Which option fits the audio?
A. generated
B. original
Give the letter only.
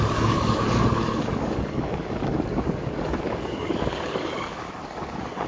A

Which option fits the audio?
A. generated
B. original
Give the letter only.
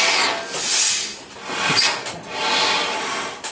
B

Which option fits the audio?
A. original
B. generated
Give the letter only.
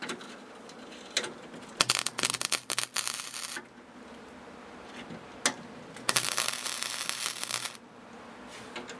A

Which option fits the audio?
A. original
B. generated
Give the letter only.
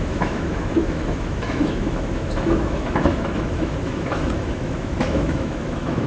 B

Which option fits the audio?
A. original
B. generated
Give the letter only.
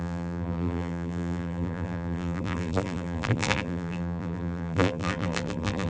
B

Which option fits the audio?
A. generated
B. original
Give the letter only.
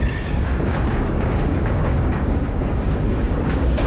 A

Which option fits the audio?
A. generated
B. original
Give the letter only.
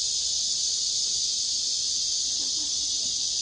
B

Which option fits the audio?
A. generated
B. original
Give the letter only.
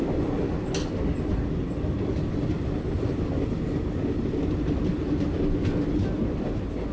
B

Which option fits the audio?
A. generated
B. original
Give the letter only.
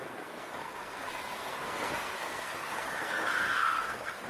A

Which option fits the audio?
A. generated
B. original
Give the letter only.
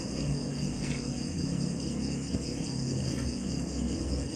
A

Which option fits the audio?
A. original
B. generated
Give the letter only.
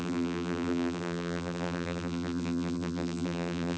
B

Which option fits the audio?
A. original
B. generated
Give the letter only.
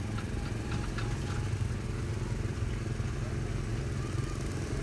A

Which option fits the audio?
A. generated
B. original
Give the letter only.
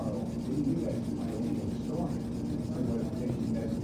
A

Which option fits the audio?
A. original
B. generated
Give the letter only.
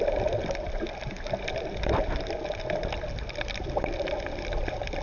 B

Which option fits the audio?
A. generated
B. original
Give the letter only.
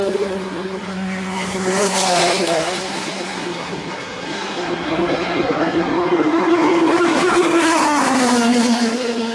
A